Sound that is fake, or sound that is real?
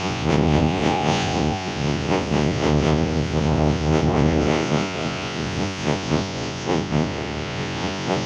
fake